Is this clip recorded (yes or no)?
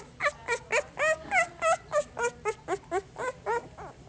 yes